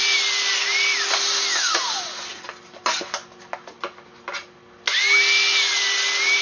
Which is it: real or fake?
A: real